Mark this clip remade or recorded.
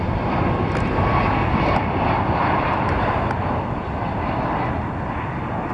recorded